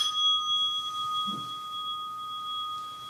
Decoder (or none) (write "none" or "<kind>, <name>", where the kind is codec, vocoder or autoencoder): none